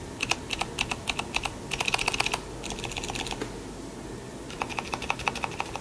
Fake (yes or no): no